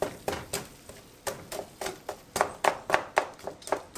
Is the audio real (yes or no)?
yes